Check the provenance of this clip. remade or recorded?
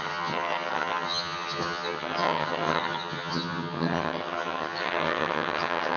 remade